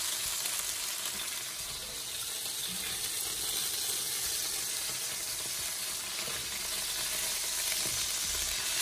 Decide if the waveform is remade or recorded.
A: recorded